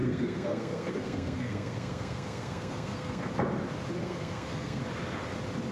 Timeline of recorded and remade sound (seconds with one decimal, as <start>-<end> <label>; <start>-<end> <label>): 0.0-3.3 remade; 3.3-4.0 recorded; 4.0-4.8 remade; 4.8-5.7 recorded